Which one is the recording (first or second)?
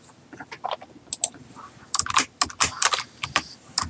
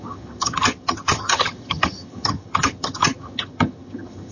first